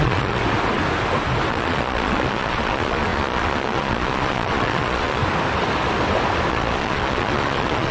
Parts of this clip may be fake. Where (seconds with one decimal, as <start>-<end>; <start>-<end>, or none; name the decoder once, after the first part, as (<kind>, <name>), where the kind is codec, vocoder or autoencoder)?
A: 0.0-0.4 (vocoder, Vocos); 1.5-5.2; 6.5-7.9